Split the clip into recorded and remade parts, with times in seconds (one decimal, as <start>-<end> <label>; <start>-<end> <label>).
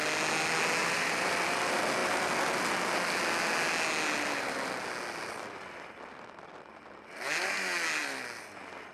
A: 0.0-0.8 recorded; 0.8-1.6 remade; 1.6-8.9 recorded